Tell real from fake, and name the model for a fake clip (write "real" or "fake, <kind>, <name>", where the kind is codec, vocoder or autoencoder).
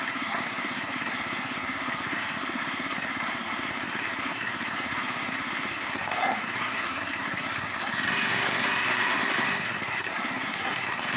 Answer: fake, codec, SNAC